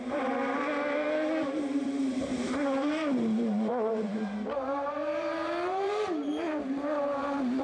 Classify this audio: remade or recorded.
remade